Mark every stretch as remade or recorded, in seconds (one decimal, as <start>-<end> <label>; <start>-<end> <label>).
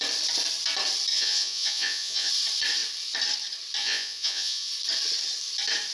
0.0-1.1 recorded; 1.1-2.3 remade; 2.3-3.8 recorded; 3.8-4.7 remade; 4.7-5.9 recorded